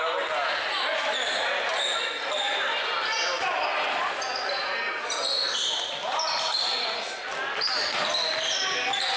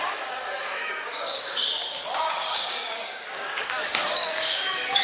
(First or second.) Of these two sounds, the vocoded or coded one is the second